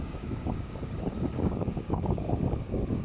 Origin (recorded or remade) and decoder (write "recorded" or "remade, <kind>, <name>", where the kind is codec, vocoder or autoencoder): remade, codec, DAC